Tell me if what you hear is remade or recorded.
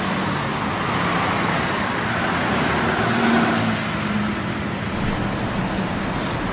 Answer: recorded